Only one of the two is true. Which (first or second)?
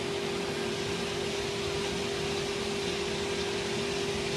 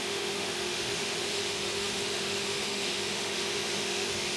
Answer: first